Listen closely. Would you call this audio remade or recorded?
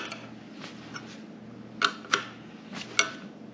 recorded